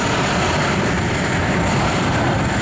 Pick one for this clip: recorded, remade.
remade